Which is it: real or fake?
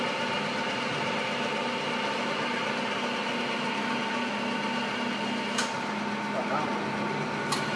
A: real